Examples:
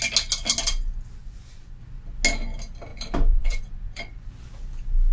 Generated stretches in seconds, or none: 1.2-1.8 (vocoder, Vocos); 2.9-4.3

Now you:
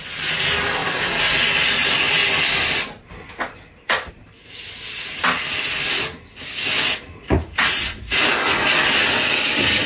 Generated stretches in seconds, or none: 7.2-8.3 (vocoder, Vocos)

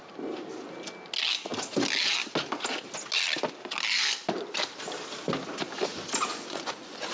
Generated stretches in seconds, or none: 6.3-7.1 (vocoder, Vocos)

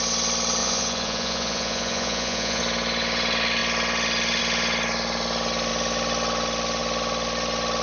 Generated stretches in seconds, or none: 0.6-2.6 (vocoder, Vocos)

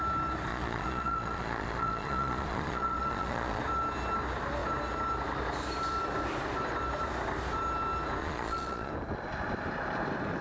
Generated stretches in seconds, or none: 0.5-3.6 (vocoder, Vocos); 8.2-8.9

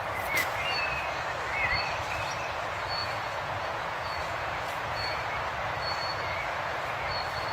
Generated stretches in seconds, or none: 3.0-5.4 (vocoder, Vocos); 6.1-7.1

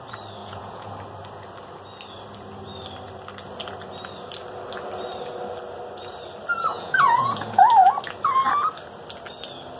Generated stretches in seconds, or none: 0.4-0.9 (vocoder, Vocos); 6.7-7.6